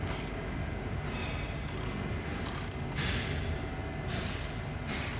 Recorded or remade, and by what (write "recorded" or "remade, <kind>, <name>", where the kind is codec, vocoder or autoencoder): recorded